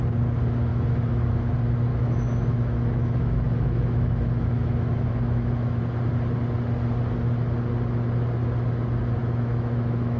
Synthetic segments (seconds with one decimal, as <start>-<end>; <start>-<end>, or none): 0.7-1.5; 1.9-5.8; 9.2-10.2